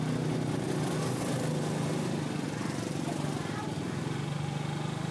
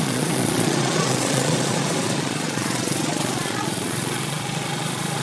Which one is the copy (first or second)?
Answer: second